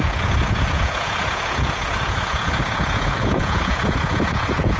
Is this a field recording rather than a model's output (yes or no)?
no